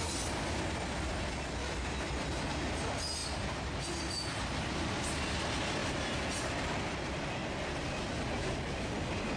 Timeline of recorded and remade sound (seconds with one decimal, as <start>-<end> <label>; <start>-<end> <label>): 0.0-9.4 recorded